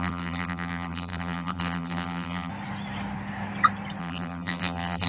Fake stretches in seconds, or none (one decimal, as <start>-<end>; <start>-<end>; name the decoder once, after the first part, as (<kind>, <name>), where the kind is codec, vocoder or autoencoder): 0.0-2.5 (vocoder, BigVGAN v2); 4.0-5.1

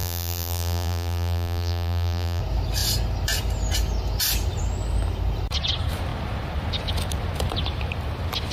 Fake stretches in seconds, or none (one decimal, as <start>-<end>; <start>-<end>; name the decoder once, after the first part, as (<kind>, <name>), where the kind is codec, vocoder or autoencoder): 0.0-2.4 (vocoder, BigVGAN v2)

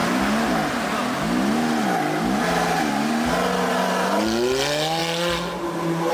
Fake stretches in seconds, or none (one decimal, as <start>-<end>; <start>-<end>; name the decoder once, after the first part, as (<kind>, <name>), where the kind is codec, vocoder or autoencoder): none

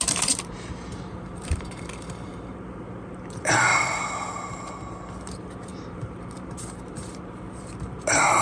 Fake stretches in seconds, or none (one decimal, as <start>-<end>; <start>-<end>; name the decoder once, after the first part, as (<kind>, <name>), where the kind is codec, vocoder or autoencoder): 0.0-3.7 (vocoder, BigVGAN v2); 5.1-8.4

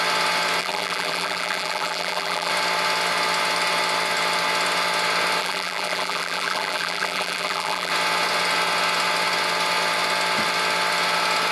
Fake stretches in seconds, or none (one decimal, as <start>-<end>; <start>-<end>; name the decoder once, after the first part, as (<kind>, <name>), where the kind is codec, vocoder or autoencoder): 0.6-2.5 (vocoder, BigVGAN v2); 5.4-7.9

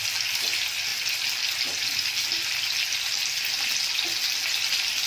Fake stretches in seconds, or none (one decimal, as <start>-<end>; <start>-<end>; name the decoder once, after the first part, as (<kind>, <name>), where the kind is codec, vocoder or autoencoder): none

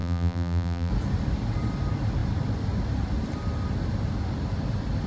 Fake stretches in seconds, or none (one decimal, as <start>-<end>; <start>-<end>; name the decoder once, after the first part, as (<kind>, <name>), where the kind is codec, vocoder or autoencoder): 0.0-0.9 (vocoder, BigVGAN v2)

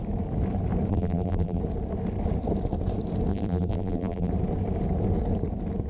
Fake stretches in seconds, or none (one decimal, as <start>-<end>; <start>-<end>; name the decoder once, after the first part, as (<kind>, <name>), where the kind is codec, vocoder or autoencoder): 0.9-1.6 (vocoder, BigVGAN v2); 3.3-4.3